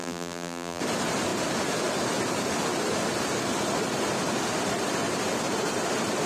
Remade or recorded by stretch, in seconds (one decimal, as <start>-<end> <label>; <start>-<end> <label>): 0.0-0.8 remade; 0.8-6.3 recorded